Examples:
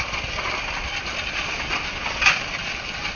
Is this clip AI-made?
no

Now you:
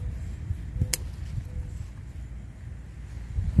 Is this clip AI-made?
no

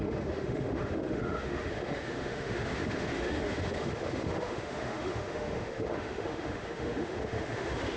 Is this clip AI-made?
yes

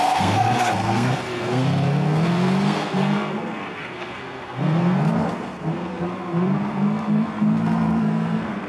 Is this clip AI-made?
yes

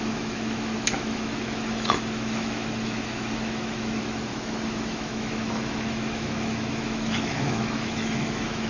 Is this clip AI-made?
yes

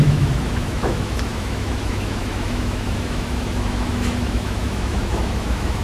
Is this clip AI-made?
yes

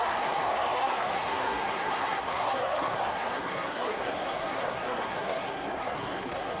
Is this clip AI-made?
yes